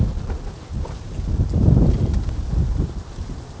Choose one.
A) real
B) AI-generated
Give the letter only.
A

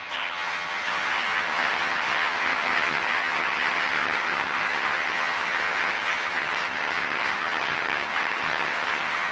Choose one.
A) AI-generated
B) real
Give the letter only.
A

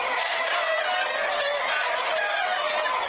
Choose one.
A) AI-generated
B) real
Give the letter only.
B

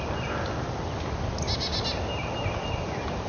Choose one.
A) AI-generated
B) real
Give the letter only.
B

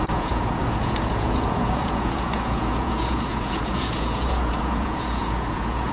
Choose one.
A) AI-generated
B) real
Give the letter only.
A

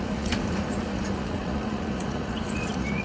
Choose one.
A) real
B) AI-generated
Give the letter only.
B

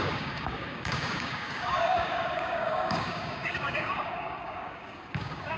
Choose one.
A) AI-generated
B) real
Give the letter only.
A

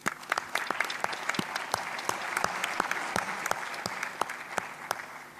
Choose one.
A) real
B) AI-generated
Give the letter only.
A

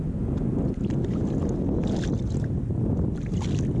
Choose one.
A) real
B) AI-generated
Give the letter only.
A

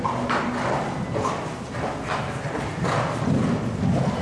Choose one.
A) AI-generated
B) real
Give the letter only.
B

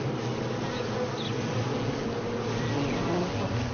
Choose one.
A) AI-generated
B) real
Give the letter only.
B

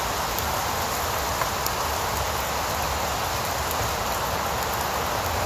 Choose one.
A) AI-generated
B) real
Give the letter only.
B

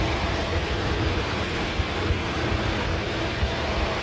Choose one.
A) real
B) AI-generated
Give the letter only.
A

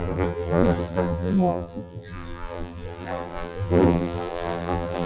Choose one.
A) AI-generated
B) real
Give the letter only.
A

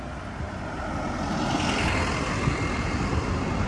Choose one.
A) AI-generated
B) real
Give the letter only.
B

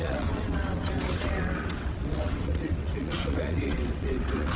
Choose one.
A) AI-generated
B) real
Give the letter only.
A